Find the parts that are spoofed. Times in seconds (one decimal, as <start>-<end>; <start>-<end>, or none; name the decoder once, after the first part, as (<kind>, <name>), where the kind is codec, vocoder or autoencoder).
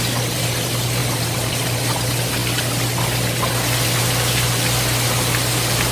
1.0-1.5 (vocoder, BigVGAN v2)